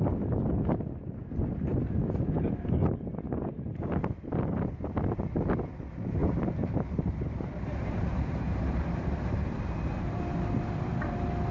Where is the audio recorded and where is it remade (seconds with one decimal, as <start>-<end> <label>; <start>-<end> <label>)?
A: 0.0-6.2 recorded; 6.2-10.2 remade; 10.2-11.5 recorded